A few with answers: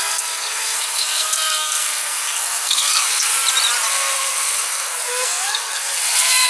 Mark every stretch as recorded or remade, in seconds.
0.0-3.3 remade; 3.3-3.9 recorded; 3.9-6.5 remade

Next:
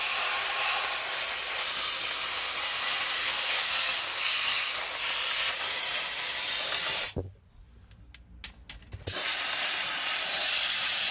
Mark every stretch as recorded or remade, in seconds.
0.0-3.2 recorded; 3.2-4.8 remade; 4.8-11.1 recorded

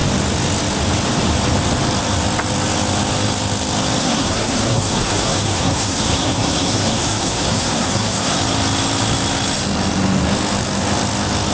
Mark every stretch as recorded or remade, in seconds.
0.0-4.0 recorded; 4.0-8.4 remade; 8.4-11.5 recorded

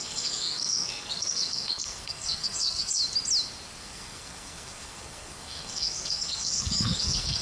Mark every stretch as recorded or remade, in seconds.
0.0-3.0 remade; 3.0-3.8 recorded; 3.8-7.4 remade

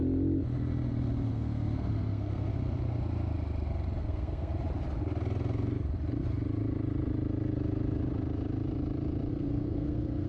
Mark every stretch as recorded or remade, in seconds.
0.0-1.3 recorded; 1.3-2.5 remade; 2.5-4.0 recorded; 4.0-4.5 remade; 4.5-9.3 recorded; 9.3-10.3 remade

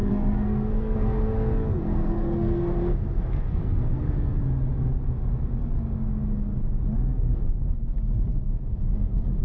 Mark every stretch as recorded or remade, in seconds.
0.0-4.4 remade; 4.4-7.1 recorded; 7.1-8.0 remade; 8.0-8.5 recorded; 8.5-9.4 remade